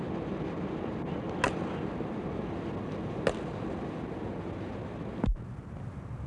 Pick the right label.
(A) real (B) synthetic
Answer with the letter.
A